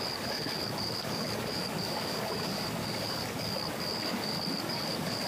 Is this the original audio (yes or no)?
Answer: no